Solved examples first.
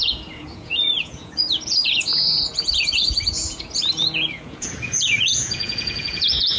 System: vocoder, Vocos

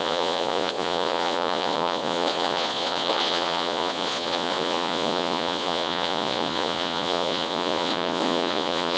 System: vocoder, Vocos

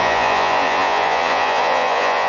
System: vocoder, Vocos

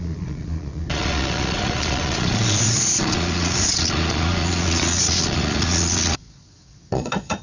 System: vocoder, Vocos